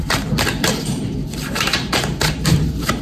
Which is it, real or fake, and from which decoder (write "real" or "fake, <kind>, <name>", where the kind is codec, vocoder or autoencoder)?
fake, vocoder, BigVGAN v2